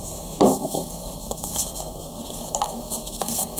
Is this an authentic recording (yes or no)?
no